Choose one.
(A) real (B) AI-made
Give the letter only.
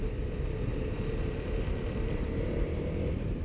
B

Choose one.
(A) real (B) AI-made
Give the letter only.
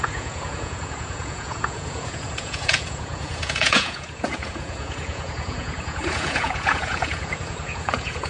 B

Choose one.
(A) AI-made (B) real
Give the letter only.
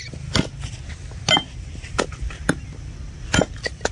B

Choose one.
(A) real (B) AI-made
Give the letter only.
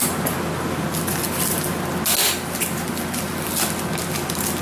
A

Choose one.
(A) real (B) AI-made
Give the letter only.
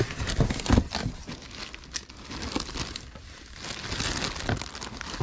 A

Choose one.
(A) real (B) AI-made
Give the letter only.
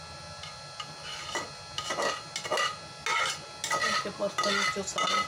A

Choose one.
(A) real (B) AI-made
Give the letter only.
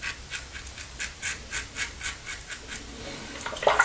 A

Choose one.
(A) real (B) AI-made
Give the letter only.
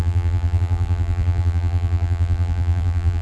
B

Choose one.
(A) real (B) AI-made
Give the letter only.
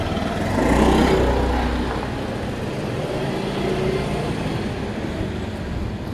A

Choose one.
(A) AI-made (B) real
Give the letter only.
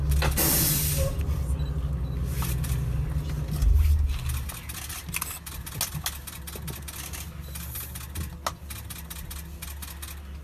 B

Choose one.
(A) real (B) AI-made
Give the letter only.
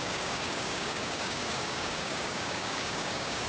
B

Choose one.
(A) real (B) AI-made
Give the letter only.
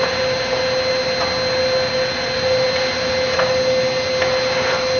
A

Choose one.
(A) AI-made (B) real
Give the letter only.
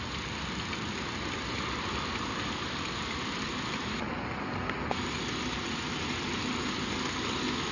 B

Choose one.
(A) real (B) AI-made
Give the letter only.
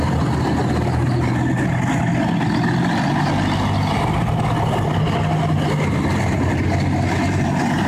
A